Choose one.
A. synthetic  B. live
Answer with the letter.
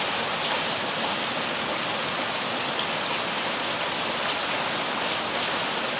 B